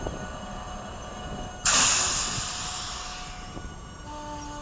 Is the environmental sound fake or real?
real